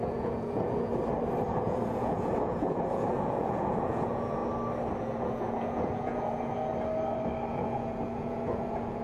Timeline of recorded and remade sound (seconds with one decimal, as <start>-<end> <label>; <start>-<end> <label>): 0.0-0.9 remade; 0.9-1.5 recorded; 1.5-4.4 remade; 4.4-5.0 recorded; 5.0-6.7 remade; 6.7-7.5 recorded; 7.5-9.0 remade